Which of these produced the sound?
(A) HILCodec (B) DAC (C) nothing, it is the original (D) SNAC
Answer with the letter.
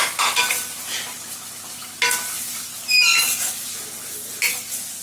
C